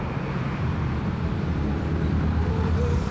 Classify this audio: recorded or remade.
remade